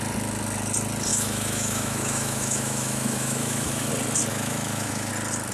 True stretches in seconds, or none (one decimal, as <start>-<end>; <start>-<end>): 0.0-1.1; 3.9-4.3; 5.1-5.5